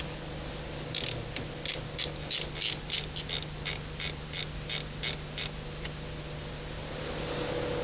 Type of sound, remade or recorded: recorded